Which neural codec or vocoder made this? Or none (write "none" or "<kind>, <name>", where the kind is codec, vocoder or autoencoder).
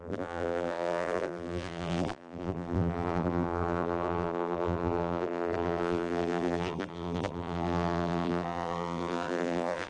vocoder, BigVGAN v2